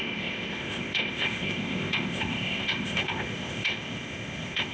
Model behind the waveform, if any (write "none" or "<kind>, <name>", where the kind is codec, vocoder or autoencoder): codec, ZipCodec